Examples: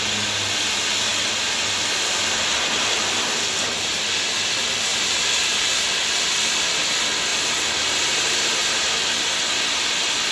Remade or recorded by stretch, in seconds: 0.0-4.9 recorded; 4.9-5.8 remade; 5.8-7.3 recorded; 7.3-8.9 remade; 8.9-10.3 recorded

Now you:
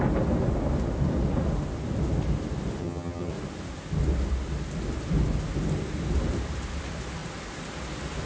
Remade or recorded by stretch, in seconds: 0.0-2.8 recorded; 2.8-3.3 remade; 3.3-8.2 recorded

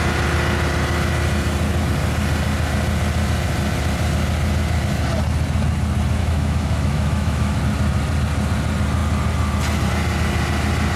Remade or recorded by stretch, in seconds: 0.0-6.2 recorded; 6.2-7.6 remade; 7.6-11.0 recorded

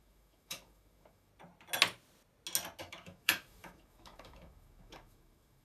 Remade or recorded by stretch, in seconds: 0.0-1.3 remade; 1.3-2.8 recorded; 2.8-5.6 remade

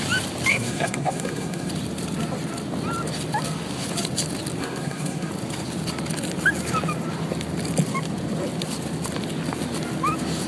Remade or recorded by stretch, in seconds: 0.0-0.5 recorded; 0.5-1.7 remade; 1.7-4.6 recorded; 4.6-5.3 remade; 5.3-10.5 recorded

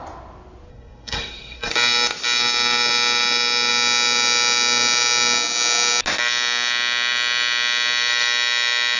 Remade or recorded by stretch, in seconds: 0.0-0.7 recorded; 0.7-1.7 remade; 1.7-9.0 recorded

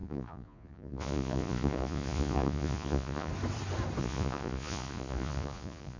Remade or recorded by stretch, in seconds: 0.0-3.3 remade; 3.3-4.0 recorded; 4.0-6.0 remade